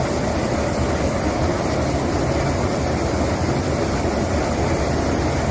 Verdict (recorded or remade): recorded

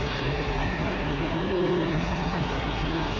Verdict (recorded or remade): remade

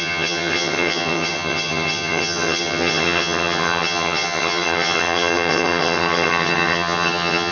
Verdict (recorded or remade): remade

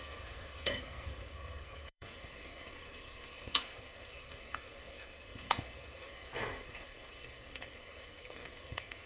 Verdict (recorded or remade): remade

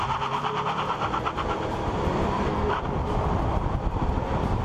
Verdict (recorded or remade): remade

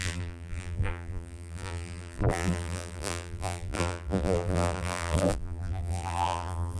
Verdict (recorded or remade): remade